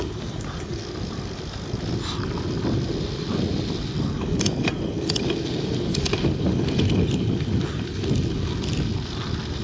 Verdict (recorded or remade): recorded